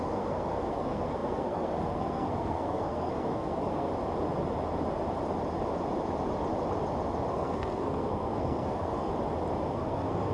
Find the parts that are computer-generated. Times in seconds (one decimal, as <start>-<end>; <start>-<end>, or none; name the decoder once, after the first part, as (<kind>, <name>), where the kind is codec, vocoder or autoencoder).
0.0-3.9 (codec, SNAC); 7.3-9.1; 9.7-10.3